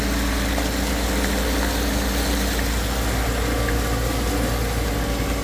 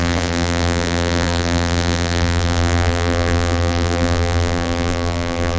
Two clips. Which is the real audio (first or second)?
first